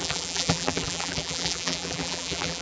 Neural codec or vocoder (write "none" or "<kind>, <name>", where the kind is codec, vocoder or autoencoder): vocoder, BigVGAN v2